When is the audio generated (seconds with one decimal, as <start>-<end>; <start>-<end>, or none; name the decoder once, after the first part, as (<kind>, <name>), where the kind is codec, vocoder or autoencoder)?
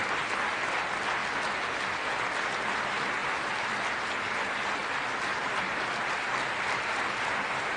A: none